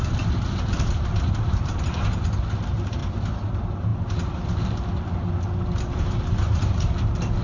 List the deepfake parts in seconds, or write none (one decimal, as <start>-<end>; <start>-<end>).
0.0-3.0; 3.5-7.4